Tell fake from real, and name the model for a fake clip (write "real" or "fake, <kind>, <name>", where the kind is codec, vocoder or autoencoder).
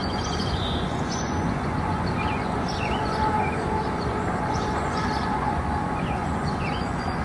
fake, vocoder, Vocos